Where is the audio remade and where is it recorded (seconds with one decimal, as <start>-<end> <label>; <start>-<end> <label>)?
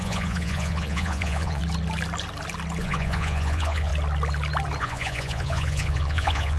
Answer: 0.0-1.6 remade; 1.6-2.8 recorded; 2.8-3.9 remade; 3.9-4.8 recorded; 4.8-6.6 remade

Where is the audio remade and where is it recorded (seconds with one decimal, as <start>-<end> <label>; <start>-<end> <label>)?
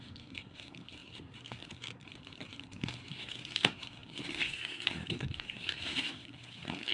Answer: 0.0-6.9 remade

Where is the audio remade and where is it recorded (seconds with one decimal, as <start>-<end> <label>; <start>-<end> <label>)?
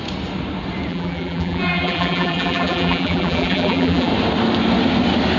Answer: 0.0-0.9 recorded; 0.9-4.1 remade; 4.1-5.4 recorded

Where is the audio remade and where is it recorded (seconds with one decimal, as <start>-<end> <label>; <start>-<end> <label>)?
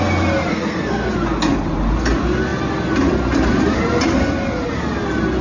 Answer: 0.0-0.5 recorded; 0.5-1.1 remade; 1.1-5.4 recorded